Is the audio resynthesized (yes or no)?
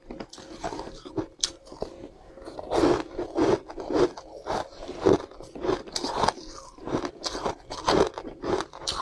no